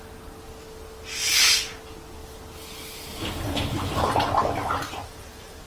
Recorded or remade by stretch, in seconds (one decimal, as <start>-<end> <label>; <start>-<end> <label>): 0.0-5.7 recorded